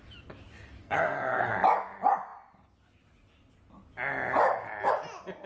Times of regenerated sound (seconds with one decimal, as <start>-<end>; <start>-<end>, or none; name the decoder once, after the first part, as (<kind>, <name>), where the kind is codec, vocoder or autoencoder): 0.8-1.5 (codec, SNAC)